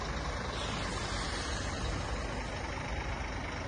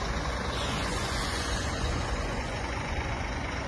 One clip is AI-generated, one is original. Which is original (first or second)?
first